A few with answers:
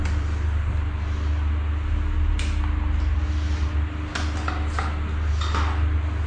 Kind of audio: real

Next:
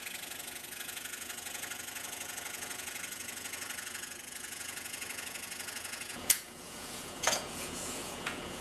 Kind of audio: fake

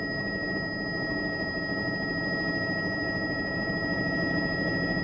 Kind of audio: real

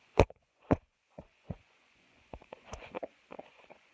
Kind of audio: fake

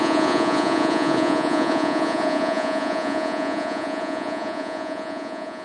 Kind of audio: fake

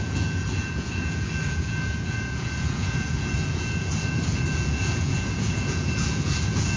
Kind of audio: fake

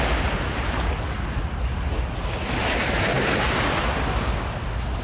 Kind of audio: real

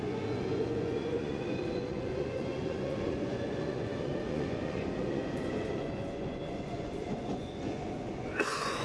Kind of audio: fake